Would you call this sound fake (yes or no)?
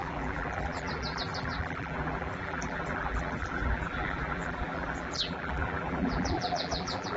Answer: yes